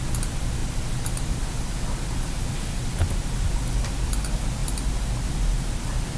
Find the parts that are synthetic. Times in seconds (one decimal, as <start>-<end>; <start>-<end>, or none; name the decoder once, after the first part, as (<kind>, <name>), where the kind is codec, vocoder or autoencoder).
none